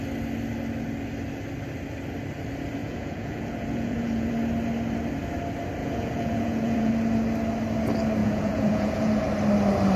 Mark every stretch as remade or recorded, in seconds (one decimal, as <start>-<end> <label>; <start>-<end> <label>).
0.0-2.8 recorded; 2.8-4.3 remade; 4.3-5.8 recorded; 5.8-6.9 remade; 6.9-8.2 recorded; 8.2-9.2 remade; 9.2-10.0 recorded